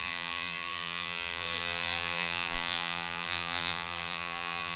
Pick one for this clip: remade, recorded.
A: remade